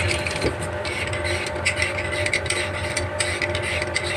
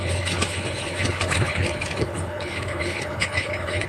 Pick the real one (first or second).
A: first